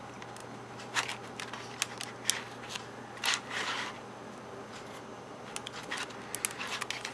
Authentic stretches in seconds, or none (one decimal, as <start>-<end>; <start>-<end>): 0.0-7.1